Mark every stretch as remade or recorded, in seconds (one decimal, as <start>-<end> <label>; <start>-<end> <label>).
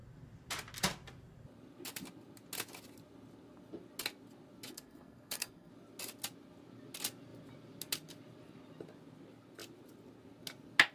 0.0-4.7 recorded; 4.7-5.7 remade; 5.7-10.9 recorded